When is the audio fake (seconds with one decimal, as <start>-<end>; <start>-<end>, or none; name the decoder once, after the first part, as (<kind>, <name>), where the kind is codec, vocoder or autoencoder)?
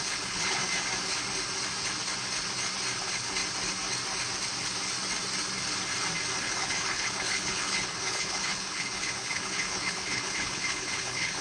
0.0-0.6 (codec, HILCodec); 3.0-3.4; 6.4-11.4